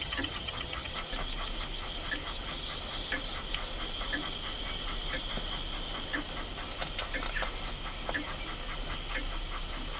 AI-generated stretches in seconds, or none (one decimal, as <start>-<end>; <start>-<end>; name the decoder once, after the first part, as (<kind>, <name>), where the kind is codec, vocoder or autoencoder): 0.0-0.9 (vocoder, HiFi-GAN)